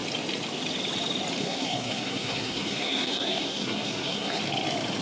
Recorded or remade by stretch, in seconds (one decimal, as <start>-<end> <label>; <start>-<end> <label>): 0.0-1.4 recorded; 1.4-4.4 remade; 4.4-5.0 recorded